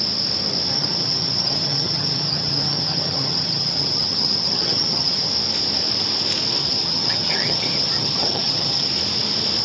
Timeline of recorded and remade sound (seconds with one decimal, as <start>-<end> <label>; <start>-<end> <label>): 0.0-0.7 recorded; 0.7-5.2 remade; 5.2-6.6 recorded; 6.6-8.9 remade; 8.9-9.6 recorded